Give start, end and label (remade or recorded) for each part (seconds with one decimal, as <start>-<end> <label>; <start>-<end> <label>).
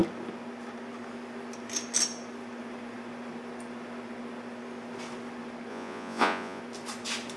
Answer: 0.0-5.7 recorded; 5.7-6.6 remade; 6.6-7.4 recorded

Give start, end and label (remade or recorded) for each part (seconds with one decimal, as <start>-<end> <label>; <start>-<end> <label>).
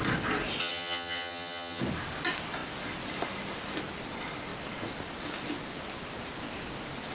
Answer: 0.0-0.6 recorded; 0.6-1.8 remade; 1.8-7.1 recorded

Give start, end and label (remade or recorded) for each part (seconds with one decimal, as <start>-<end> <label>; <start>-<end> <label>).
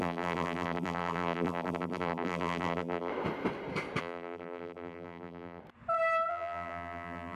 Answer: 0.0-3.1 remade; 3.1-4.0 recorded; 4.0-5.6 remade; 5.6-6.3 recorded; 6.3-7.3 remade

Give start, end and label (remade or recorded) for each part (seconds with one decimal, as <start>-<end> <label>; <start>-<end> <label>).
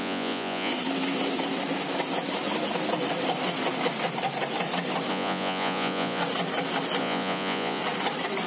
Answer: 0.0-0.7 remade; 0.7-5.1 recorded; 5.1-6.2 remade; 6.2-7.0 recorded; 7.0-7.8 remade; 7.8-8.5 recorded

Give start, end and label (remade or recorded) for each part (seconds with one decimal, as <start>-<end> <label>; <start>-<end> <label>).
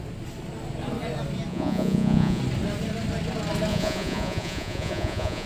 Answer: 0.0-1.5 recorded; 1.5-2.4 remade; 2.4-3.7 recorded; 3.7-5.5 remade